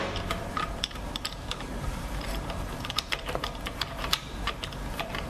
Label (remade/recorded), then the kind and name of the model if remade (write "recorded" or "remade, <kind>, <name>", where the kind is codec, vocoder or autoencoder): remade, vocoder, BigVGAN v2